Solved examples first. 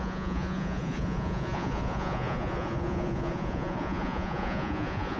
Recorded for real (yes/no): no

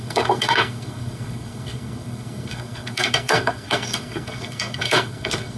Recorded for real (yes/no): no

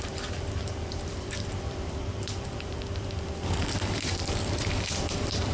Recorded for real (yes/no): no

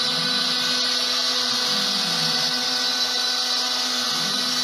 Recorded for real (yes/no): yes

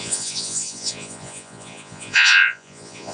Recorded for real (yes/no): no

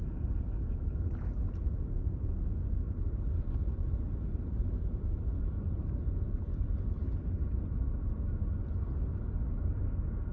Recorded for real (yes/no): yes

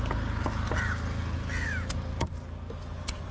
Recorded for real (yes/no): yes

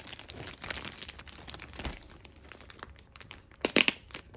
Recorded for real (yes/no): no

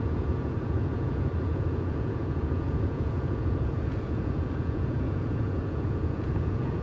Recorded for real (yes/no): no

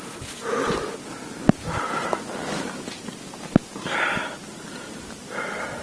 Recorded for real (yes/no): yes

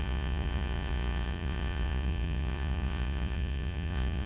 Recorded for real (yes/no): no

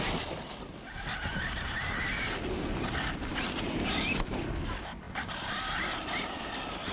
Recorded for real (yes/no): yes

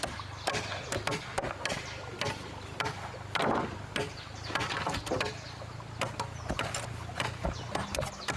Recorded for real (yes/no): yes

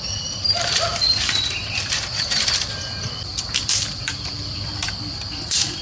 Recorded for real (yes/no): no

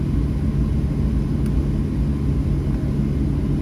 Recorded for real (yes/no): yes